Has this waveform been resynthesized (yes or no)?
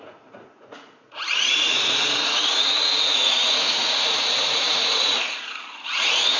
yes